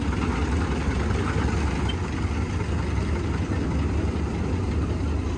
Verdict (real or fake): real